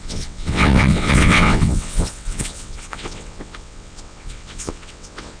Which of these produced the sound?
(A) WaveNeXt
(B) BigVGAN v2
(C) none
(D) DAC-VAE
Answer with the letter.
A